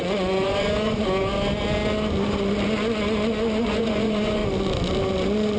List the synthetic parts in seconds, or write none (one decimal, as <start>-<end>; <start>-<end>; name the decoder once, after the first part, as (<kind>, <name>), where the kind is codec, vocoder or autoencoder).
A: 0.0-1.3 (vocoder, Vocos); 3.6-4.4